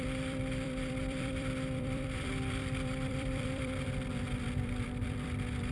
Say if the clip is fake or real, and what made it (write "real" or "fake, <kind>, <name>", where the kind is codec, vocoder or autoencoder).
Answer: fake, vocoder, BigVGAN v2